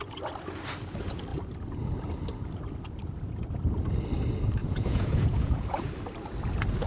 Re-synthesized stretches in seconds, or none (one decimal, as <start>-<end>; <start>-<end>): 4.6-5.9